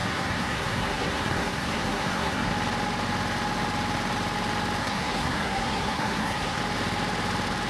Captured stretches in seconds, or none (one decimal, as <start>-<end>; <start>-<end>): 2.5-4.8; 6.6-7.7